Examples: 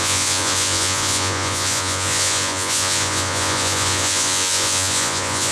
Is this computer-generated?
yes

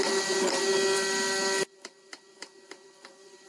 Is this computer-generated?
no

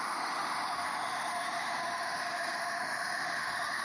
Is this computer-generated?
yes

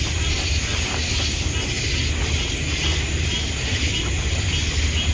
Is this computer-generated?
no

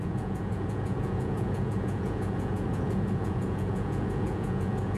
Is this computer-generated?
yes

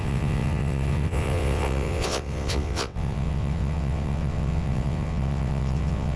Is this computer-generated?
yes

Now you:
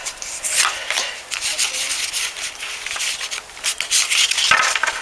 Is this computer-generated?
no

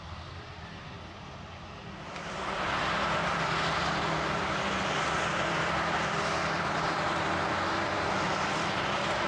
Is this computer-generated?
yes